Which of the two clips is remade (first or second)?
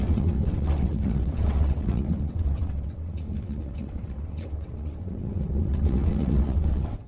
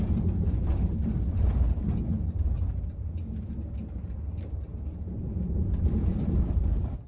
first